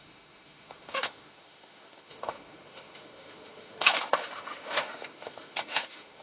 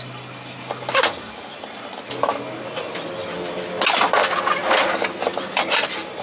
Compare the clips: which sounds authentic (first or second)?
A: second